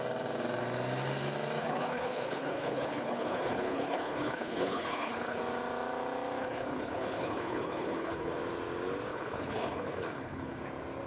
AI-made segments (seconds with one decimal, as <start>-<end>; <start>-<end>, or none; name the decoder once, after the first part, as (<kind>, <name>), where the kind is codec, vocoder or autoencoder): 1.6-5.4 (codec, HILCodec); 6.4-8.3; 9.1-10.6